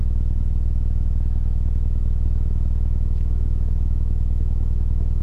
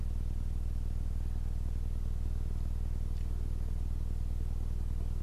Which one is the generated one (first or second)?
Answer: first